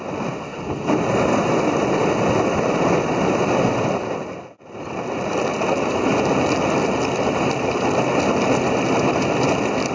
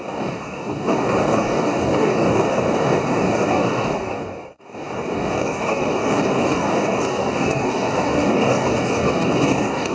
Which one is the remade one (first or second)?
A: second